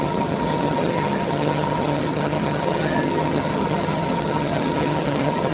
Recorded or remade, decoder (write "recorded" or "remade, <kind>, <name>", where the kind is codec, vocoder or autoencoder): remade, vocoder, HiFi-GAN